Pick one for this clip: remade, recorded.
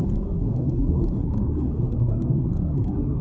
remade